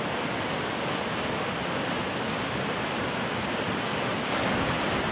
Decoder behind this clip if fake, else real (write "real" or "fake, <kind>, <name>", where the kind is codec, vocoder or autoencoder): real